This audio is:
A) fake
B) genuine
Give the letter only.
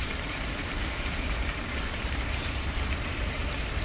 A